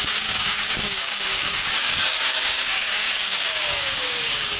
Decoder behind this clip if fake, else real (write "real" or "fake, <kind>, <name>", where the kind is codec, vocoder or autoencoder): fake, codec, DAC